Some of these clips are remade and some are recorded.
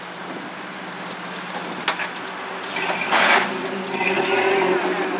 recorded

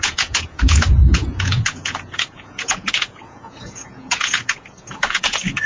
remade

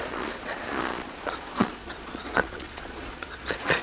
remade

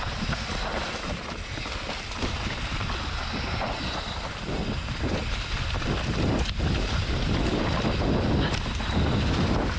recorded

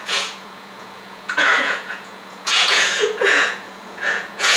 remade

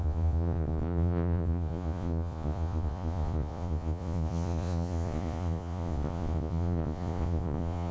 remade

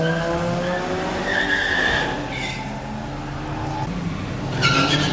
recorded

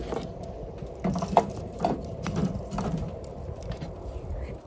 recorded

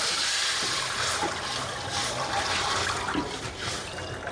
recorded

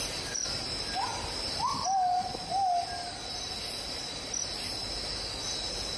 recorded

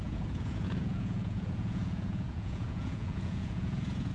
remade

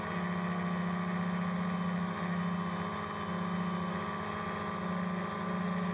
recorded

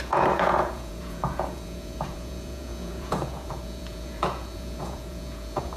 remade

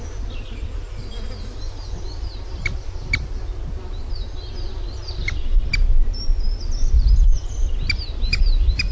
recorded